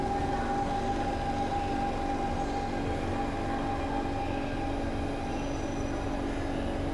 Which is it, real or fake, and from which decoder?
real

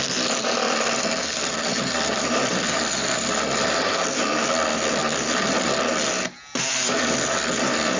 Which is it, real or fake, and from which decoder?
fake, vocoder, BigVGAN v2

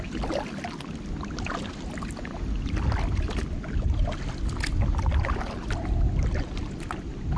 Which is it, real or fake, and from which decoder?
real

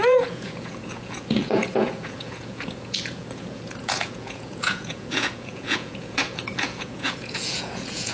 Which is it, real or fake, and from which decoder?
fake, vocoder, Vocos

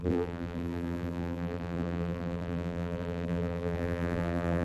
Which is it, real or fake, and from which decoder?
fake, vocoder, BigVGAN v2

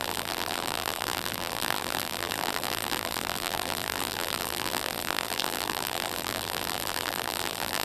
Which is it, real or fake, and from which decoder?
fake, vocoder, BigVGAN v2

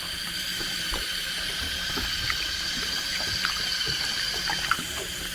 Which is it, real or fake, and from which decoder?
fake, vocoder, BigVGAN v2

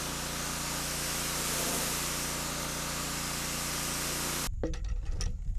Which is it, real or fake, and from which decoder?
real